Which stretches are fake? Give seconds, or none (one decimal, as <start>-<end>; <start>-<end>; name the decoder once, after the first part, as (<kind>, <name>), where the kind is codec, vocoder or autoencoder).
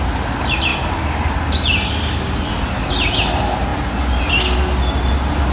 none